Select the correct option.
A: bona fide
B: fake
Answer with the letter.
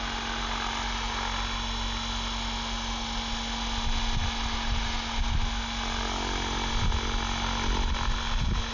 A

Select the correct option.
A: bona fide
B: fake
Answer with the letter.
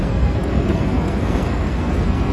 B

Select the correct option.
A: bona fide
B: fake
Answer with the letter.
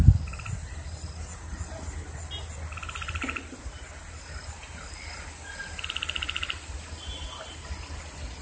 A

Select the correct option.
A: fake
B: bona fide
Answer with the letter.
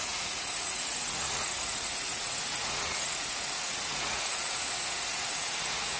A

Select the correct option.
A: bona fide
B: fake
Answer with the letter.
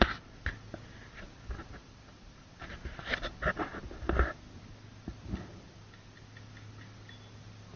A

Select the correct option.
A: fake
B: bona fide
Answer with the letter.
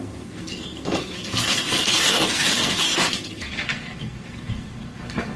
A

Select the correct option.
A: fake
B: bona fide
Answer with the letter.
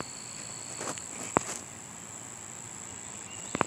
B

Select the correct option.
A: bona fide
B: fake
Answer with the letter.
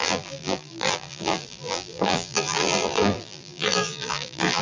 B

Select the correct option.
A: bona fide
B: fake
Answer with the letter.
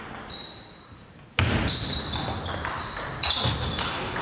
A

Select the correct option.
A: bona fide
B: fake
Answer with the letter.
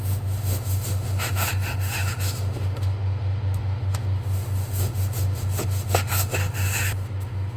B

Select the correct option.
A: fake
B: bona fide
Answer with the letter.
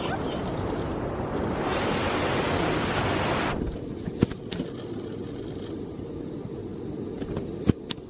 B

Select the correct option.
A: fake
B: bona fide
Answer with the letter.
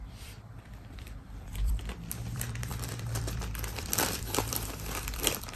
A